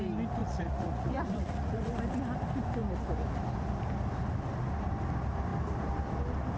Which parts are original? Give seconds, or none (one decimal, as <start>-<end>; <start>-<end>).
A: 0.0-0.4; 1.9-6.6